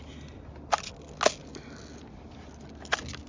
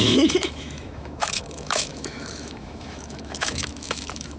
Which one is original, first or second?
first